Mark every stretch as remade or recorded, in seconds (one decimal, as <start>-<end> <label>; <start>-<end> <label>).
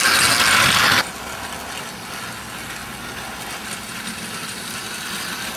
0.0-5.6 recorded